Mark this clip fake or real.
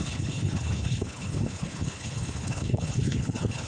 fake